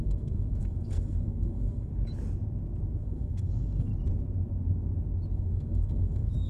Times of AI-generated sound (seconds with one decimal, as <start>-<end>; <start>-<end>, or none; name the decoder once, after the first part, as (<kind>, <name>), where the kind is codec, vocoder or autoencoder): 0.0-1.9 (codec, SNAC); 3.0-3.9; 5.3-6.5